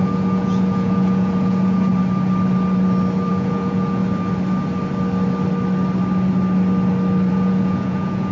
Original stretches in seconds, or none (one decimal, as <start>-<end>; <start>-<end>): 1.9-3.3; 4.0-7.3